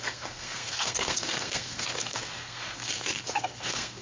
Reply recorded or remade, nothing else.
remade